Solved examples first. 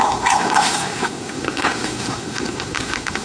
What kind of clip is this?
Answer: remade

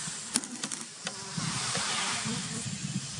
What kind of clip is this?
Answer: recorded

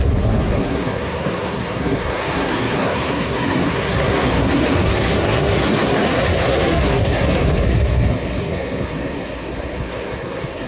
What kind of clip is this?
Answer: remade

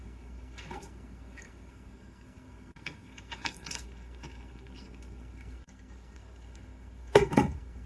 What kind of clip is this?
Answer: remade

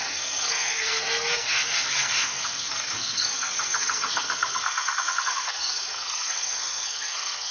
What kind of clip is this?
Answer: remade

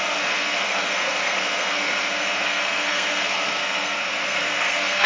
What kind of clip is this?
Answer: remade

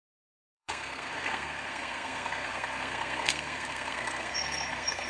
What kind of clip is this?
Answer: remade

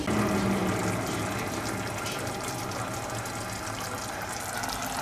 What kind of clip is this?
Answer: recorded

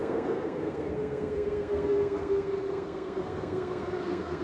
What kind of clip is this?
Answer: remade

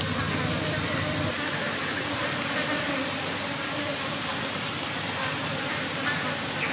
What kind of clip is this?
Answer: recorded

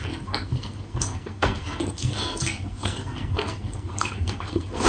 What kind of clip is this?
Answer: remade